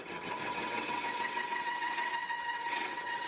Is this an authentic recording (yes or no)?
no